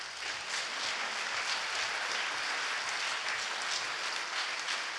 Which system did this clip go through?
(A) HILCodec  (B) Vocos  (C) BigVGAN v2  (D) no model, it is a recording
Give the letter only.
D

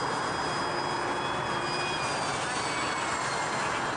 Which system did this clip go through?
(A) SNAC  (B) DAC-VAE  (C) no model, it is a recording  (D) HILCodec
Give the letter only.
C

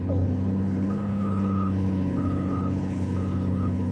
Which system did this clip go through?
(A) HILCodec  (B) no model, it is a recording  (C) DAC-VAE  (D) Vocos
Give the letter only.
A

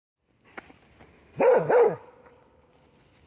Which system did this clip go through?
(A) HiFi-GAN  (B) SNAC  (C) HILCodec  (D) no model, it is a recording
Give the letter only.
D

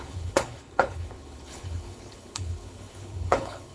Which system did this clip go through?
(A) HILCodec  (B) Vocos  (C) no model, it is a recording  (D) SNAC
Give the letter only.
A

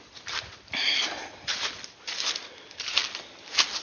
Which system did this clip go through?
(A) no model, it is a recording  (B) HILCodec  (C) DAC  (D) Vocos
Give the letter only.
A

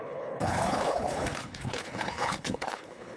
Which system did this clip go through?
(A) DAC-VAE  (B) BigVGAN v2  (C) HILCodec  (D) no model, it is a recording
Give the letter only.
C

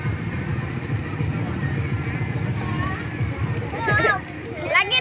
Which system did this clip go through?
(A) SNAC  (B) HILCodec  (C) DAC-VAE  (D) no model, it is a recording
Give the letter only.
D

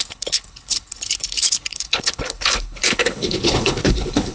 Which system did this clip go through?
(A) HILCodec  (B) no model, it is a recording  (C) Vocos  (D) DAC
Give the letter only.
A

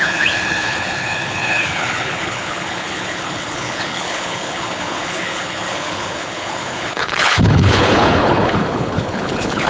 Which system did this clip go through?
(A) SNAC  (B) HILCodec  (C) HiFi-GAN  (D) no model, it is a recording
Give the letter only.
B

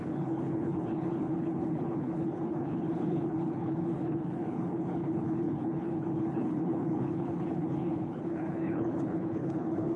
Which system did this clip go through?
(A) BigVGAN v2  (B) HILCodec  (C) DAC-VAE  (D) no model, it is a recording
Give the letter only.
B